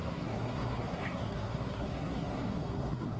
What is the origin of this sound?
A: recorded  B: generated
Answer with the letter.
B